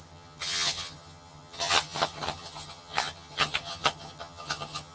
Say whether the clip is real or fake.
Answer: fake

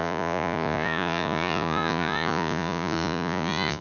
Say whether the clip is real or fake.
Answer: fake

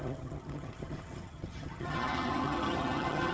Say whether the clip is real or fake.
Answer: fake